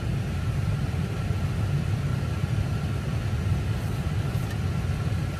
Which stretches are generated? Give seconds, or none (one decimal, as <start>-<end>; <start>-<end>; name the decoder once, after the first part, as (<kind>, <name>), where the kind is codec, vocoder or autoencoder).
none